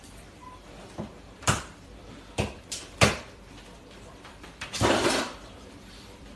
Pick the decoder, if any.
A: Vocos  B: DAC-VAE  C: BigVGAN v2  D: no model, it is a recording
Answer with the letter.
C